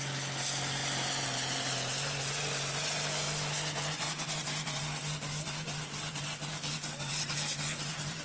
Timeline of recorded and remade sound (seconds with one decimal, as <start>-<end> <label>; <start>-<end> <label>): 0.0-6.5 recorded; 6.5-7.1 remade; 7.1-8.2 recorded